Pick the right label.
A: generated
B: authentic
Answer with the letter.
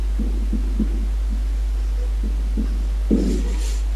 B